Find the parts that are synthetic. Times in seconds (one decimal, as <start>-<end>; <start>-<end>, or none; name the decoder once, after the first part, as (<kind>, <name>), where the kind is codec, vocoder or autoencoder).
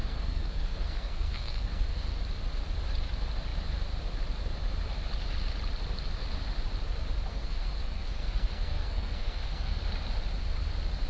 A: 0.0-2.2 (codec, SNAC); 7.3-9.8